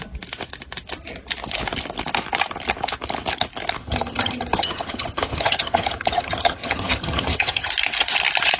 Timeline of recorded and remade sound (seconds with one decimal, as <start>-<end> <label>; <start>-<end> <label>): 0.0-3.8 recorded; 3.8-7.7 remade; 7.7-8.6 recorded